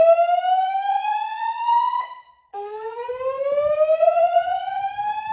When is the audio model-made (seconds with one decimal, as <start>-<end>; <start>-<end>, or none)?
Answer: 0.9-3.1; 4.0-4.8